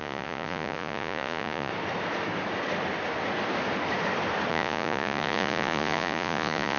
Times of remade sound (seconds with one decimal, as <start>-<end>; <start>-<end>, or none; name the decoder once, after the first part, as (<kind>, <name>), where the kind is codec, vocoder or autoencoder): 0.0-1.7 (vocoder, Vocos); 4.5-6.8